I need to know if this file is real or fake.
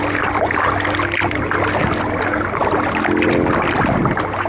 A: real